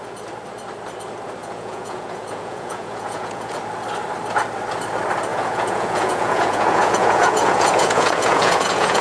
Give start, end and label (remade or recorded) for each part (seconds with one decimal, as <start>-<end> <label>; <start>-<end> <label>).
0.0-1.4 recorded; 1.4-3.6 remade; 3.6-5.3 recorded; 5.3-9.0 remade